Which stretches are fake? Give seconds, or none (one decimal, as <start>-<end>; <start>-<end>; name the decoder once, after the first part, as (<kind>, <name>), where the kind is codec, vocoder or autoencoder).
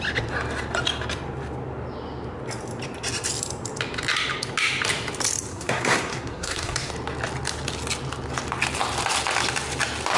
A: 5.5-6.9 (codec, SNAC)